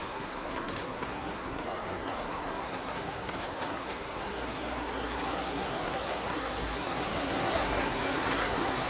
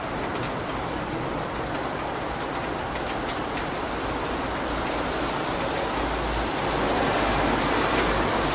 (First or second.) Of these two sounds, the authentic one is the second